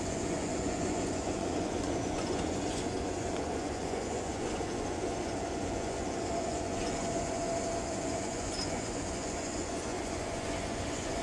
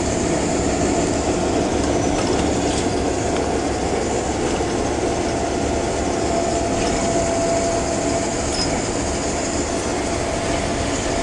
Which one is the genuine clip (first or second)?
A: second